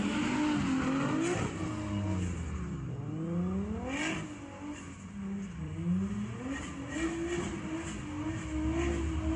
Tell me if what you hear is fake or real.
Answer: real